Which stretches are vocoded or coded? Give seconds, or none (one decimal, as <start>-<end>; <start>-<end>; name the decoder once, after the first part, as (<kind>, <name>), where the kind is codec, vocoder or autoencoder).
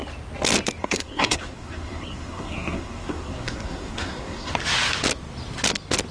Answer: 0.8-4.5 (codec, SNAC)